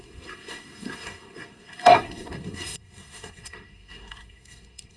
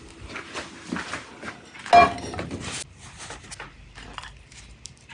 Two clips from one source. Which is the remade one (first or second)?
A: first